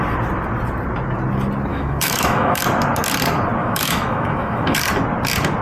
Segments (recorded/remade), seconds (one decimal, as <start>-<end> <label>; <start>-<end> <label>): 0.0-1.7 recorded; 1.7-2.6 remade; 2.6-3.6 recorded; 3.6-4.8 remade; 4.8-5.6 recorded